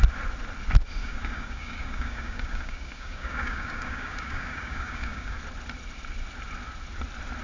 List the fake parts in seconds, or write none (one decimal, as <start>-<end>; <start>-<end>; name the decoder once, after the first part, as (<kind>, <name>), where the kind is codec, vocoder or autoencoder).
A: 1.0-5.4 (codec, DAC)